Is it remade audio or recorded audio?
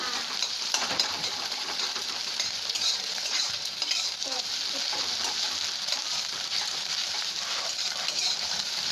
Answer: remade